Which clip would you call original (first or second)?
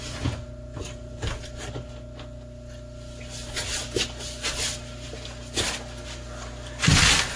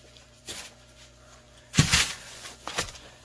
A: first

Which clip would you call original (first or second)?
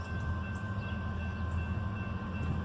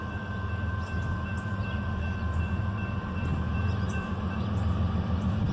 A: first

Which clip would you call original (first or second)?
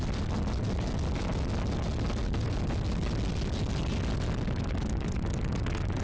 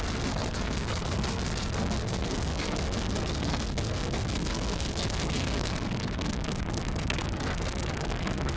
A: first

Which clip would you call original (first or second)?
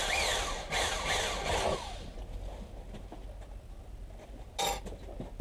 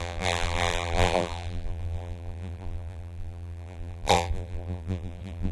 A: first